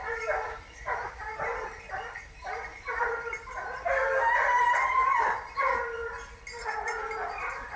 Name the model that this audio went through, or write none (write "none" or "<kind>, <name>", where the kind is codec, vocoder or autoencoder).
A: none